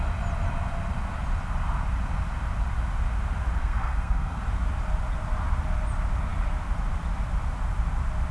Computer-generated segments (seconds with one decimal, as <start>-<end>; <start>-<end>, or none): 3.6-4.4